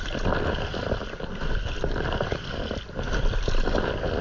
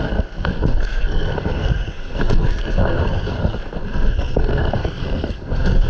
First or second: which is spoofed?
second